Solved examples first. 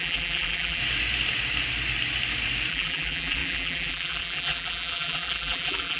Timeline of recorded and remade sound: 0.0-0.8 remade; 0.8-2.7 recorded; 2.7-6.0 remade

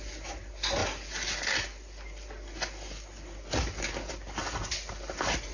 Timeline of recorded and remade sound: 0.0-5.5 recorded

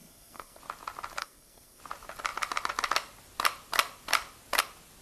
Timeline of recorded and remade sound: 0.0-0.6 remade; 0.6-1.2 recorded; 1.2-1.8 remade; 1.8-5.0 recorded

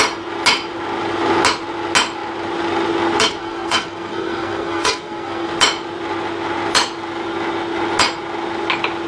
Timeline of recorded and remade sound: 0.0-3.4 recorded; 3.4-5.5 remade; 5.5-9.1 recorded

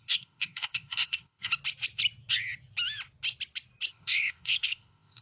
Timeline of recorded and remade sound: 0.0-1.5 remade; 1.5-3.9 recorded; 3.9-5.2 remade

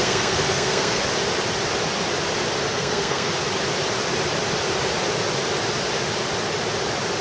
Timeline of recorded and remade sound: 0.0-1.0 remade; 1.0-2.7 recorded; 2.7-3.3 remade; 3.3-7.2 recorded

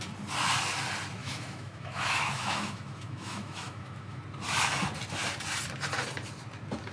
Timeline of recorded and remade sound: 0.0-1.2 recorded; 1.2-4.2 remade; 4.2-6.9 recorded

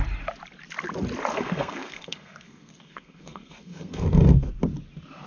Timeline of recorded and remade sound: 0.0-1.3 recorded; 1.3-4.5 remade; 4.5-5.3 recorded